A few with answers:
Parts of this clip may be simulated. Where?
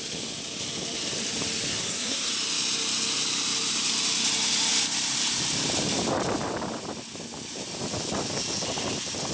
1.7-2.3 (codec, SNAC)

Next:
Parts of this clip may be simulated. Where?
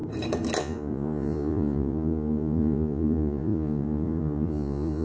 0.6-5.0 (vocoder, Vocos)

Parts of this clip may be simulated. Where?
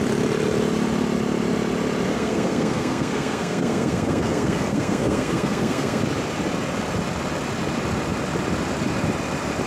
2.1-6.0 (codec, SNAC)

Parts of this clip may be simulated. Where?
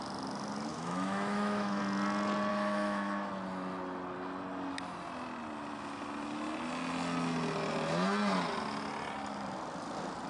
0.7-1.8 (autoencoder, DAC-VAE); 2.5-3.3